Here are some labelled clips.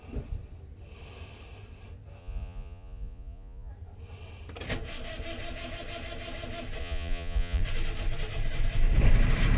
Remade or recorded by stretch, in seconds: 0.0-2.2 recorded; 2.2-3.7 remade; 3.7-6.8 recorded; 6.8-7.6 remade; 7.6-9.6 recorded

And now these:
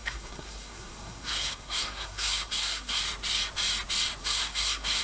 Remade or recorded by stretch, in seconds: 0.0-3.0 remade; 3.0-4.2 recorded; 4.2-5.0 remade

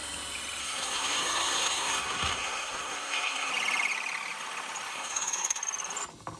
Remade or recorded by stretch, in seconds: 0.0-0.6 recorded; 0.6-3.5 remade; 3.5-4.9 recorded; 4.9-5.6 remade; 5.6-6.4 recorded

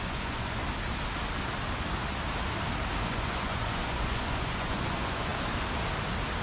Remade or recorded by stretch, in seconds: 0.0-0.6 remade; 0.6-3.0 recorded; 3.0-5.3 remade; 5.3-6.4 recorded

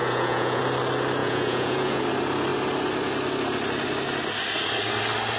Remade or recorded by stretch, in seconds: 0.0-0.6 remade; 0.6-1.2 recorded; 1.2-2.0 remade; 2.0-5.4 recorded

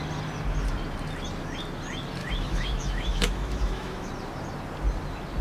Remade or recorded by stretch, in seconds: 0.0-2.2 recorded; 2.2-4.1 remade; 4.1-5.4 recorded

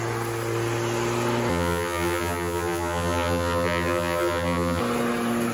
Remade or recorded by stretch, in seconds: 0.0-1.5 recorded; 1.5-4.8 remade; 4.8-5.5 recorded